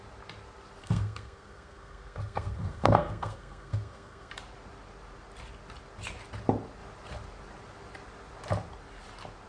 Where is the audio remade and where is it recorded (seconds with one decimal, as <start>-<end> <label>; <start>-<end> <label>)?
0.0-0.8 recorded; 0.8-4.3 remade; 4.3-9.5 recorded